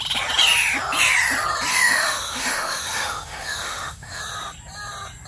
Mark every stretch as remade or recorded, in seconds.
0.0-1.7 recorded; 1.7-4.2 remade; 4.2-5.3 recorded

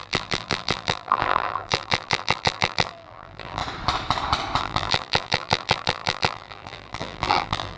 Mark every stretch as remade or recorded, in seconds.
0.0-3.6 remade; 3.6-4.6 recorded; 4.6-7.8 remade

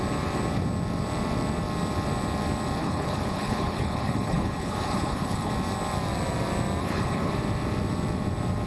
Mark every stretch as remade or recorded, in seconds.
0.0-2.8 recorded; 2.8-5.5 remade; 5.5-6.8 recorded; 6.8-7.3 remade; 7.3-8.7 recorded

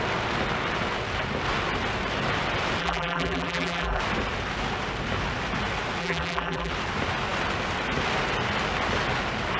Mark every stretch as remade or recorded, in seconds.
0.0-2.8 recorded; 2.8-4.0 remade; 4.0-6.0 recorded; 6.0-6.7 remade; 6.7-9.6 recorded